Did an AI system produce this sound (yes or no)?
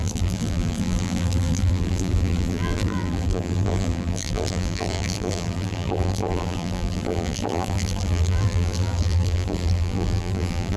yes